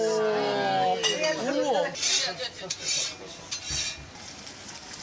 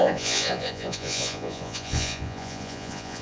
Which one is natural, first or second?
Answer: first